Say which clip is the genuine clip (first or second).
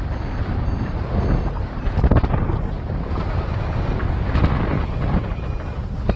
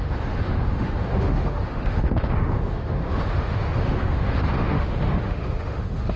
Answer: first